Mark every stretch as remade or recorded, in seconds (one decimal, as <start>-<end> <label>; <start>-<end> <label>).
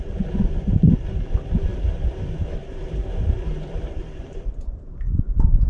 0.0-1.7 recorded; 1.7-5.1 remade; 5.1-5.7 recorded